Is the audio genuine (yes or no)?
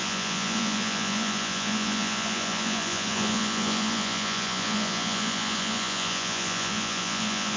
no